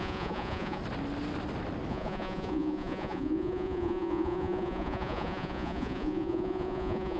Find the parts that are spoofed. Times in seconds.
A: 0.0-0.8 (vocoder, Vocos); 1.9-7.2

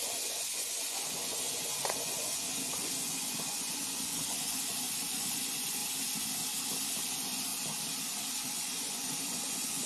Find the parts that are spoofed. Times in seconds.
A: 0.0-5.8 (vocoder, Vocos); 7.0-7.5; 8.3-9.9

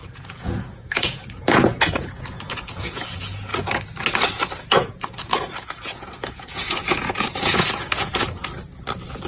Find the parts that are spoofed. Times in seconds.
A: 0.0-3.5 (vocoder, Vocos); 4.6-8.4